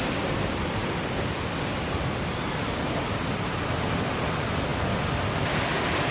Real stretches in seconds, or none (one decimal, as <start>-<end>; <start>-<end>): 0.0-6.1